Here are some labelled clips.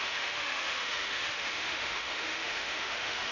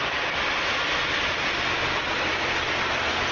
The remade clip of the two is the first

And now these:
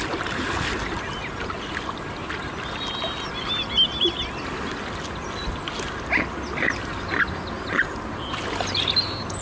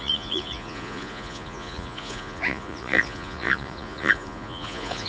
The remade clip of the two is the second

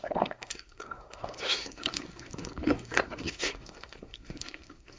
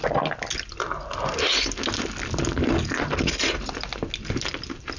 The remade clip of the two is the first